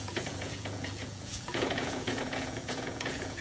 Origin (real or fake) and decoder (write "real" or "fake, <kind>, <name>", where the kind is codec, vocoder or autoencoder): fake, vocoder, Vocos